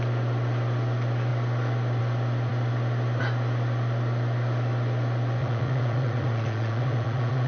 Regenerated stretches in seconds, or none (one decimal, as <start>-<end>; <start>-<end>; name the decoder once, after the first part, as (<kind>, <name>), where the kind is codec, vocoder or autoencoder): 5.4-7.5 (vocoder, Vocos)